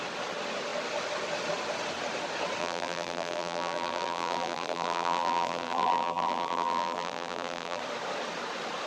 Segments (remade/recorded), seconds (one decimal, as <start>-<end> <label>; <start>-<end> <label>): 0.0-2.6 recorded; 2.6-7.8 remade; 7.8-8.9 recorded